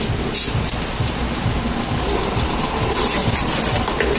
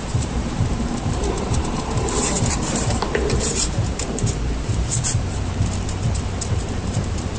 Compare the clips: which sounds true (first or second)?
first